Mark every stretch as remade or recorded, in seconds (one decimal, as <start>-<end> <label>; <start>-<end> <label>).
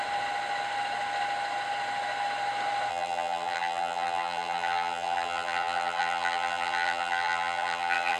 0.0-2.9 recorded; 2.9-8.2 remade